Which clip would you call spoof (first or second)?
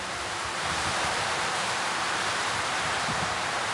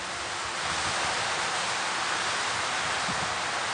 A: first